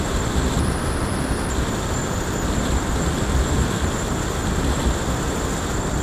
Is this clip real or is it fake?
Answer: real